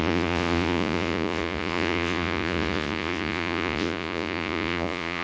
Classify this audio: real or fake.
fake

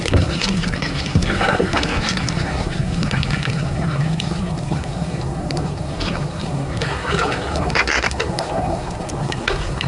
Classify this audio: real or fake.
fake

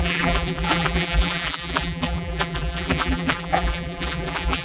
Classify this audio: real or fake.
fake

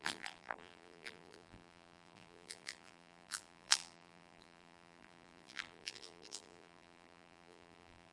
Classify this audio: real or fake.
fake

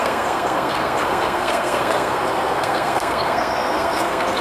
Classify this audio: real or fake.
fake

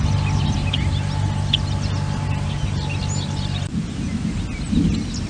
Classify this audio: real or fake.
real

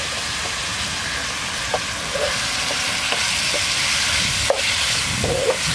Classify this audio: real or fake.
real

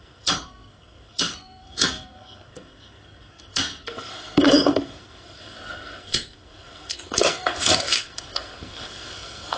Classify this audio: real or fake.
fake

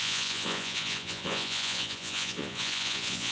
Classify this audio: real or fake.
fake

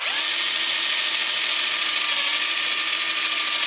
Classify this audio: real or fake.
real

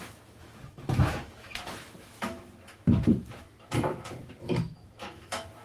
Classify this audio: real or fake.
fake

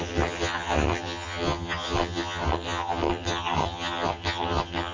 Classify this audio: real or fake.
fake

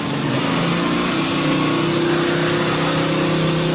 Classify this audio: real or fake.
real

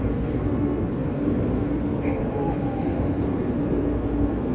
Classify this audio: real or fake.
fake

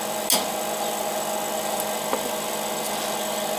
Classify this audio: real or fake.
real